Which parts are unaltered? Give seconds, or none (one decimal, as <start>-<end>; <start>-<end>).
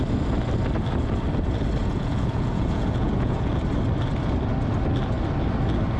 0.0-1.8; 3.5-6.0